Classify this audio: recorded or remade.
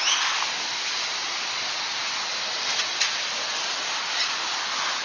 recorded